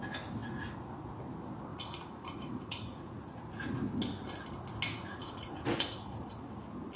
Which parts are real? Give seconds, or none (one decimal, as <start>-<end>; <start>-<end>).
0.0-1.7; 3.7-5.0; 6.3-7.0